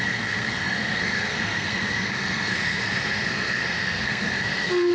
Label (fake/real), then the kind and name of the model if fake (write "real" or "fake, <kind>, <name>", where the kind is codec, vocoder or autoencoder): fake, codec, SNAC